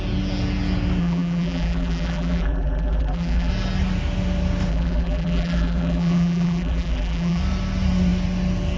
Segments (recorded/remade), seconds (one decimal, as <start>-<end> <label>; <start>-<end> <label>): 0.0-1.0 recorded; 1.0-3.5 remade; 3.5-4.7 recorded; 4.7-7.4 remade; 7.4-8.8 recorded